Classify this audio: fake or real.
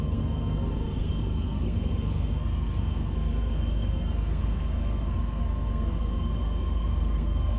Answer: fake